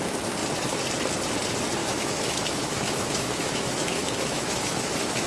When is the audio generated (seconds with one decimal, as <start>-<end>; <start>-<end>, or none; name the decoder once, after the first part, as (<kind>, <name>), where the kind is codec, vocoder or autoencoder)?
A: 1.8-5.3 (autoencoder, DAC-VAE)